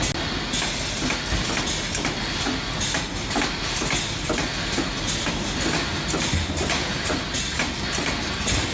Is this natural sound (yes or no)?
yes